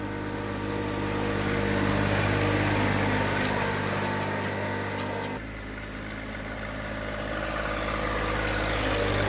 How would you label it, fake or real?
real